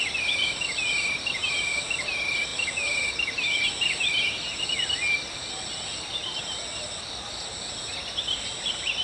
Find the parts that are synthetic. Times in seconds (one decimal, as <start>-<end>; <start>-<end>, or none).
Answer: none